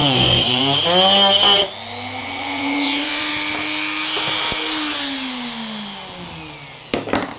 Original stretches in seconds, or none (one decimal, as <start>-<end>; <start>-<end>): 0.6-2.2; 3.3-7.4